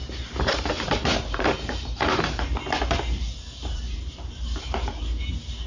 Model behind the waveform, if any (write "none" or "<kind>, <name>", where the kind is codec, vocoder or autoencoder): vocoder, BigVGAN v2